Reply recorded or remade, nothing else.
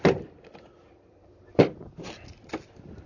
recorded